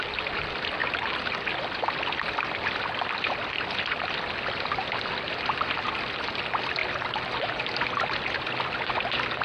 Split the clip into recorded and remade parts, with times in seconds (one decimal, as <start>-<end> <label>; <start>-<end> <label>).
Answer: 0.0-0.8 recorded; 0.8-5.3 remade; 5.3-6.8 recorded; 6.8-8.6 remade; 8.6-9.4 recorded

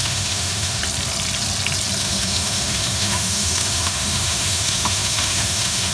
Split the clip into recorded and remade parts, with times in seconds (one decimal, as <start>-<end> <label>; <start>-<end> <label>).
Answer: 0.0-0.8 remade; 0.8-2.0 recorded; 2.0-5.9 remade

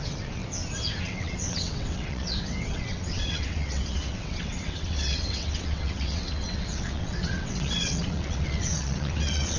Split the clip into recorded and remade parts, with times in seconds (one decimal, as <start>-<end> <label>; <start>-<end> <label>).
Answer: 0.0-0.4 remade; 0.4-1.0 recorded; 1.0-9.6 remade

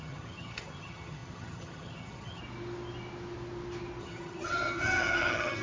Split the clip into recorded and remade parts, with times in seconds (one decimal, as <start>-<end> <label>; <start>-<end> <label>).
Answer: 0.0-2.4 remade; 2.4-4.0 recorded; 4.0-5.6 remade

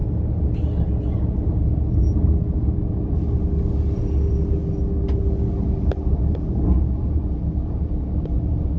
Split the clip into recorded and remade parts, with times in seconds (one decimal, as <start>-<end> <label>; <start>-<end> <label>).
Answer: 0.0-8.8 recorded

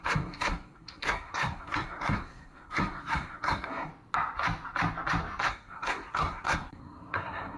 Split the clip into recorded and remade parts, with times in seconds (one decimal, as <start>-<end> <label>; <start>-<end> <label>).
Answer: 0.0-3.9 remade; 3.9-5.5 recorded; 5.5-7.6 remade

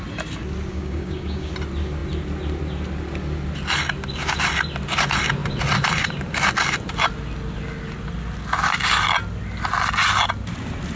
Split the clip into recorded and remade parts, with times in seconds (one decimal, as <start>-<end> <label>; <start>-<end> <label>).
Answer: 0.0-0.7 recorded; 0.7-1.5 remade; 1.5-11.0 recorded